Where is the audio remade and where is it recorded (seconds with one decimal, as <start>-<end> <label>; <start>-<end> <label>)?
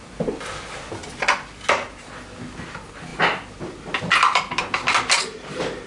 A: 0.0-5.9 recorded